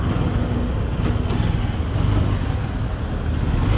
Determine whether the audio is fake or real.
real